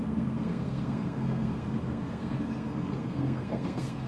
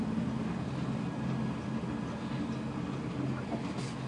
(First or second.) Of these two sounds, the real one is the second